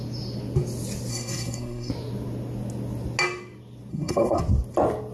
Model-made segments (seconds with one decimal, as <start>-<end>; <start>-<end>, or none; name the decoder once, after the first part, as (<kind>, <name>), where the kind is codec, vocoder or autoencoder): 1.1-1.9 (codec, SNAC); 3.9-4.4